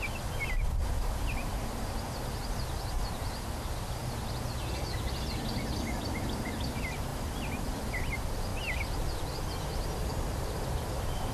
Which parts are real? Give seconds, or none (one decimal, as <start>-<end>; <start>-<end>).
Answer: 0.0-11.3